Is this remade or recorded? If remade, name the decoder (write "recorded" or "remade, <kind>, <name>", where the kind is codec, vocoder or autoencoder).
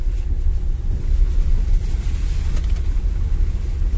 recorded